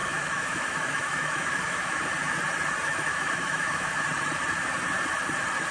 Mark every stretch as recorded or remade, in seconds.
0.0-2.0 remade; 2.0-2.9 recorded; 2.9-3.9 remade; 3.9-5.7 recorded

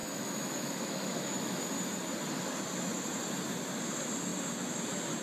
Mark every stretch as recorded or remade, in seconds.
0.0-1.6 remade; 1.6-5.2 recorded

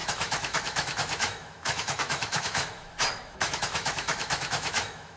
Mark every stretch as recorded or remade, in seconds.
0.0-5.2 remade